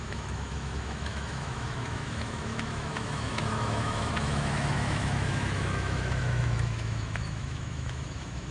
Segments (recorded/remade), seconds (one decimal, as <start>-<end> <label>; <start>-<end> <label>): 0.0-8.5 remade